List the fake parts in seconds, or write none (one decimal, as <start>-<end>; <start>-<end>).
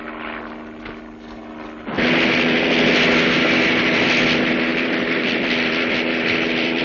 4.7-6.8